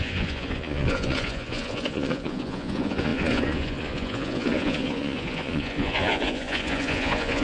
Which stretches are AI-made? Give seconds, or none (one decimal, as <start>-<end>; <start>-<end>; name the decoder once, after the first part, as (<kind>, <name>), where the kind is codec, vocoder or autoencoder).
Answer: 0.0-7.4 (vocoder, Vocos)